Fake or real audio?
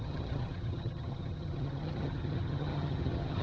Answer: fake